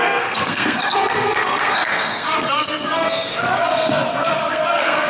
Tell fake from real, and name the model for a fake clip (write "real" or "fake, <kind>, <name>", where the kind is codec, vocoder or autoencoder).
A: fake, codec, SNAC